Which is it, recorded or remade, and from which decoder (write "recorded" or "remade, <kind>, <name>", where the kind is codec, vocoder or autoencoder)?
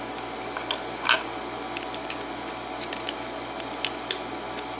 recorded